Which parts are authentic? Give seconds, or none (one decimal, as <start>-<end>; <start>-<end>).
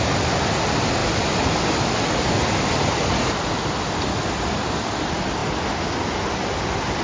0.0-7.0